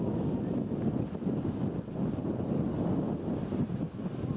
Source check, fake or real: real